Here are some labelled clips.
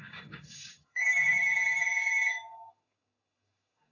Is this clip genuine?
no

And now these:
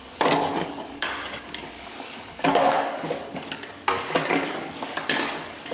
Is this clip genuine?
no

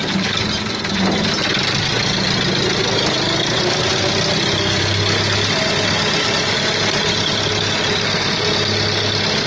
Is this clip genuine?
yes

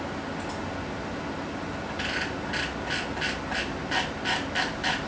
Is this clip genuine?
yes